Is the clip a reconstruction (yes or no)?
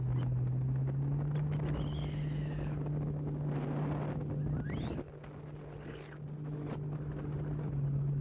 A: no